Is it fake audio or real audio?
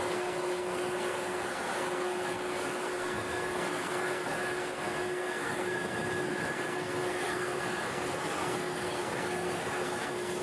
fake